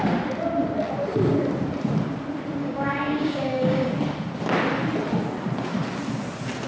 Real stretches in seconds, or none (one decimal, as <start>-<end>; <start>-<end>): 0.0-2.6; 3.9-6.7